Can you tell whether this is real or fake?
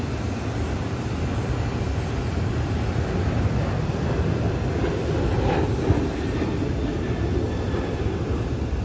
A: real